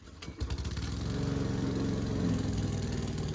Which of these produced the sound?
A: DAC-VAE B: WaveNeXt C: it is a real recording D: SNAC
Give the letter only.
C